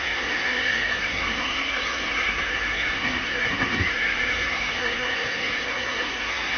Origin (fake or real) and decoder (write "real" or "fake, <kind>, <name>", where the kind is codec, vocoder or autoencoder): fake, codec, SNAC